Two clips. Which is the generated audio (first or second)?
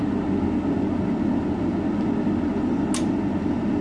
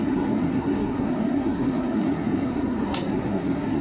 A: second